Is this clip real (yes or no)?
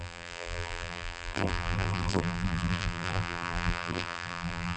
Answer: no